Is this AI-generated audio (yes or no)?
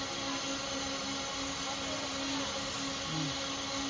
no